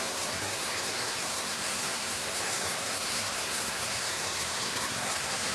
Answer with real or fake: fake